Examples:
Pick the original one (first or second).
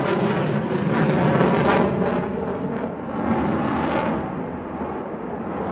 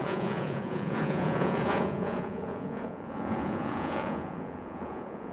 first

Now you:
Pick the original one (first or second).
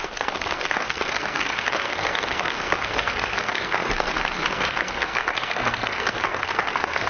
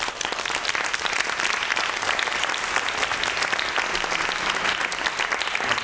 second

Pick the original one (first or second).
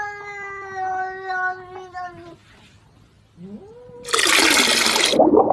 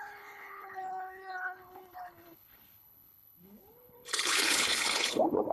first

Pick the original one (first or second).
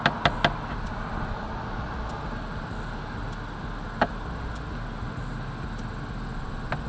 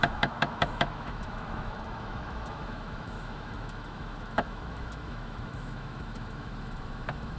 first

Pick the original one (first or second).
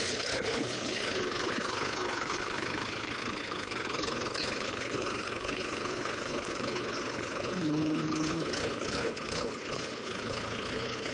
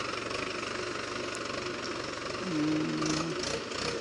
second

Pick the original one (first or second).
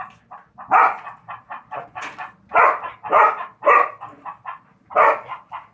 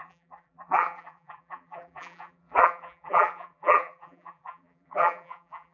first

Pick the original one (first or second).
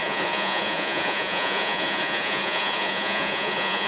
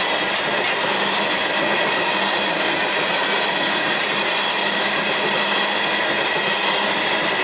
second